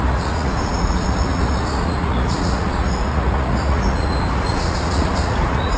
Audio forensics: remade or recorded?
remade